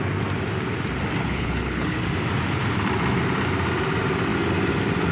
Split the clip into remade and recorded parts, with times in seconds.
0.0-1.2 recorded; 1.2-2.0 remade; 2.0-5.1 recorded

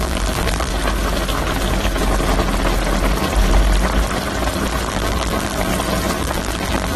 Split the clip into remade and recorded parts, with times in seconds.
0.0-0.7 remade; 0.7-4.9 recorded; 4.9-5.7 remade; 5.7-6.2 recorded; 6.2-7.0 remade